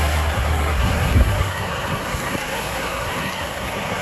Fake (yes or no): yes